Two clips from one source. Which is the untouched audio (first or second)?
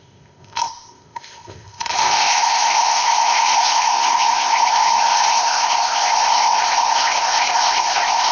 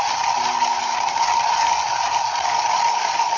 second